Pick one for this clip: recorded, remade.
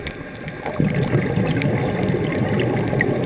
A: recorded